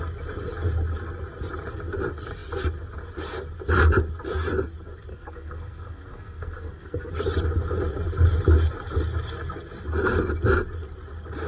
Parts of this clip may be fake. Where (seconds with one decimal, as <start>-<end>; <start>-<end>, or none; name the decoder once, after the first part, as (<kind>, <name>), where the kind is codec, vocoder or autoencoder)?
5.1-7.1 (codec, SNAC)